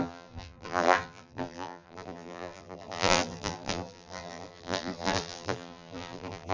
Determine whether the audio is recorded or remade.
remade